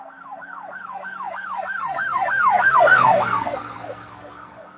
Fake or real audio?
fake